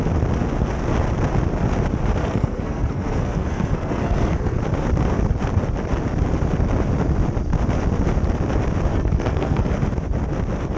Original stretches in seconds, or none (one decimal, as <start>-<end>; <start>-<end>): 0.0-2.2; 4.6-8.9; 9.7-10.8